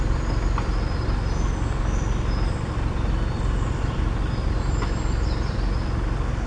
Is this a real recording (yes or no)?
yes